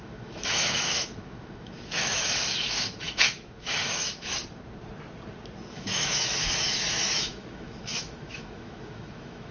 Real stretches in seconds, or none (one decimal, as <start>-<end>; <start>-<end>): 4.4-5.7